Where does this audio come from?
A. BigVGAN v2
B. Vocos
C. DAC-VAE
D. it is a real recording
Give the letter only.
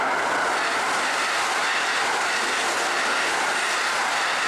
D